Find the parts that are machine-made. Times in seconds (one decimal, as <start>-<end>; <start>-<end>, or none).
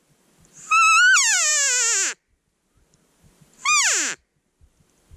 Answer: none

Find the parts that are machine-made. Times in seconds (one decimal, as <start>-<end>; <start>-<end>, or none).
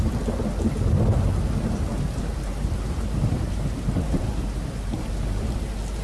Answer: 1.9-5.5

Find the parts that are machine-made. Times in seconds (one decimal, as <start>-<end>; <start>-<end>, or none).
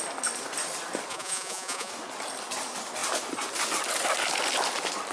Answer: 1.1-1.9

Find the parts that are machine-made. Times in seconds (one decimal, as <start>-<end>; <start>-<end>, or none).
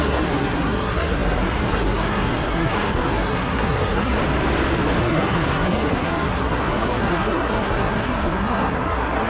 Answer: 0.0-4.2; 5.0-9.3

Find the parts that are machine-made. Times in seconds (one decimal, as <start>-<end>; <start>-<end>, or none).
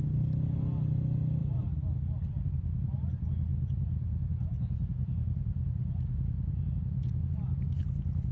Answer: 3.5-7.3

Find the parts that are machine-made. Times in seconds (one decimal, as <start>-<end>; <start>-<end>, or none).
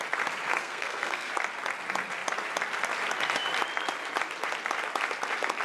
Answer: 0.6-1.3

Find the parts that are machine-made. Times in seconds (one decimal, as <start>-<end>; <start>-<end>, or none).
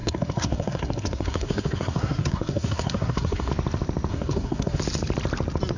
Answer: 0.0-3.5; 4.1-4.8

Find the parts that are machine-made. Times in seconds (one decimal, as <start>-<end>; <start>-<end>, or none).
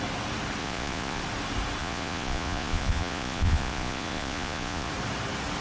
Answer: 0.6-1.2; 1.8-4.9